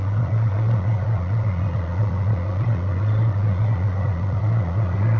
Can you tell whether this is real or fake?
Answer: fake